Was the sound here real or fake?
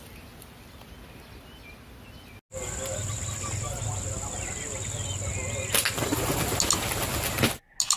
real